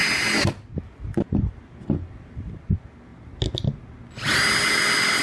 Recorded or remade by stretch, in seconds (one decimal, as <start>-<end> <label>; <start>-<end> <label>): 0.0-5.2 recorded